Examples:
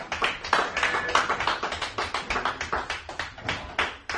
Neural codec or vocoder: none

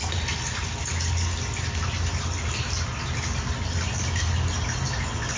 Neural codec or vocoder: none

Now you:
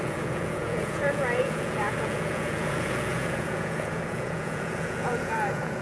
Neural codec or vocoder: vocoder, Vocos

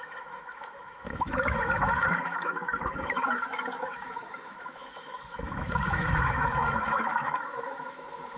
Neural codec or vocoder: autoencoder, DAC-VAE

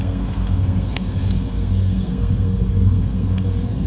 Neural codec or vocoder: codec, SNAC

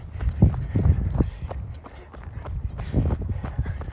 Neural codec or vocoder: none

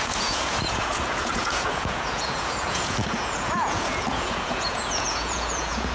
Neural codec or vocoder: vocoder, Vocos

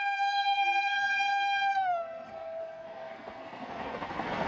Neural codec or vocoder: codec, SNAC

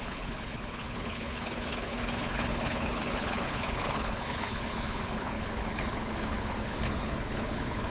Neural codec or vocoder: codec, HILCodec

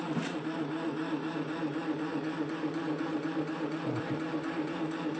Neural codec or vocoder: vocoder, BigVGAN v2